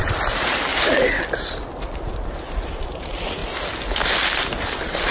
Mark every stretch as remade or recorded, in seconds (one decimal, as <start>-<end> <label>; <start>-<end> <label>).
0.0-0.7 remade; 0.7-1.9 recorded; 1.9-3.4 remade; 3.4-5.1 recorded